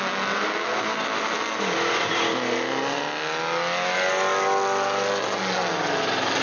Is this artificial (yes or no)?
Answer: no